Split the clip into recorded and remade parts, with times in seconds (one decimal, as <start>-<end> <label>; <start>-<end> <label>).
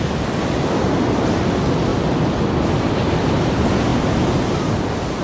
0.0-5.2 recorded